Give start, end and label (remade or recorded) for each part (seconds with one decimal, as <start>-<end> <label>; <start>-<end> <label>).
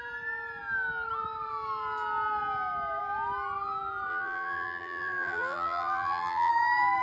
0.0-4.1 recorded; 4.1-6.5 remade; 6.5-7.0 recorded